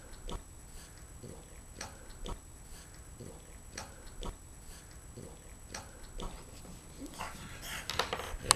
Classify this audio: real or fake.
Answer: real